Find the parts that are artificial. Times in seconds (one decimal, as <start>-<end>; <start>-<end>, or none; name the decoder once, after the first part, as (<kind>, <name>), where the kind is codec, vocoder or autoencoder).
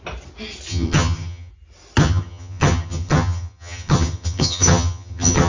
0.7-1.5 (vocoder, HiFi-GAN); 2.0-5.5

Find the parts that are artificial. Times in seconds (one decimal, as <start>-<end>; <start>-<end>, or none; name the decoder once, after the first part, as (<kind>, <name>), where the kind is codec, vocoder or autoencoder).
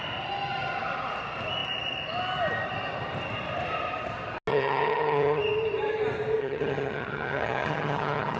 4.5-5.4 (vocoder, HiFi-GAN); 6.4-8.4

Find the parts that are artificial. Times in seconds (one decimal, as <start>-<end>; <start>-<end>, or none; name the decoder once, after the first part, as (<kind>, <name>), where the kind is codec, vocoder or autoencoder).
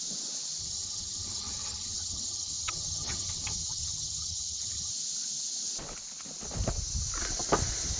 0.6-4.9 (vocoder, HiFi-GAN)